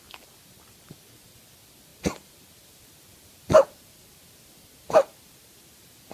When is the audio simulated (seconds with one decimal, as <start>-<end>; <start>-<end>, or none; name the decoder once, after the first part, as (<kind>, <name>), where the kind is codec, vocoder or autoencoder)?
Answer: 1.9-5.4 (vocoder, BigVGAN v2)